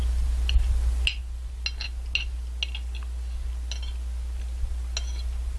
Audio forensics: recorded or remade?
recorded